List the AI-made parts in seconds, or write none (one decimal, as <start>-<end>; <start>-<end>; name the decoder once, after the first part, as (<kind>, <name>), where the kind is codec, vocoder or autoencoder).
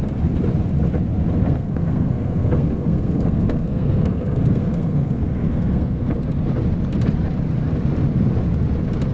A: 1.4-6.1 (codec, SNAC)